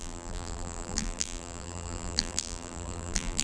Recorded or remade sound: remade